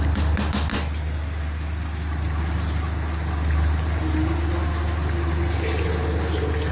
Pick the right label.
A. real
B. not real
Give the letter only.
A